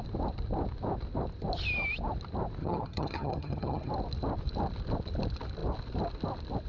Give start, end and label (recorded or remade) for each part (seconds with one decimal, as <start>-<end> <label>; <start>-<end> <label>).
0.0-2.6 recorded; 2.6-3.9 remade; 3.9-6.7 recorded